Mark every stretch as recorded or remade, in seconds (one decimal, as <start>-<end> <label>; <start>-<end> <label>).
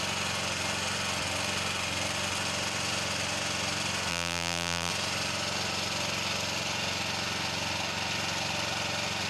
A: 0.0-4.1 recorded; 4.1-4.9 remade; 4.9-9.3 recorded